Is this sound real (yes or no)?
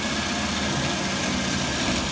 yes